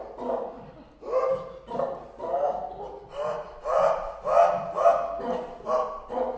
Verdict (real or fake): real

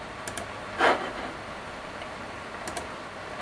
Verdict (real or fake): real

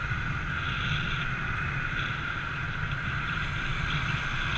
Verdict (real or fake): real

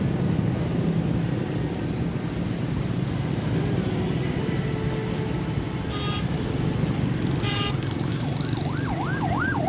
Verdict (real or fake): real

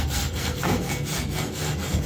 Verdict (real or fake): fake